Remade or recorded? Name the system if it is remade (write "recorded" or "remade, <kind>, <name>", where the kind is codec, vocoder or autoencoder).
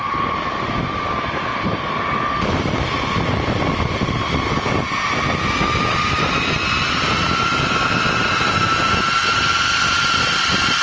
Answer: remade, vocoder, BigVGAN v2